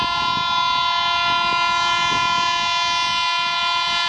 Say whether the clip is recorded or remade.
recorded